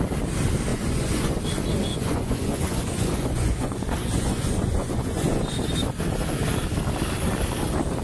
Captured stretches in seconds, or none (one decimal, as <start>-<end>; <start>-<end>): 0.0-0.7; 1.4-1.9; 5.4-8.0